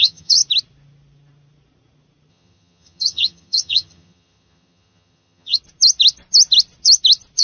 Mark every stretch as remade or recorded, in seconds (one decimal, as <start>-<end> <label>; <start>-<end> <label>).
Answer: 0.0-0.4 remade; 0.4-2.3 recorded; 2.3-5.6 remade; 5.6-7.4 recorded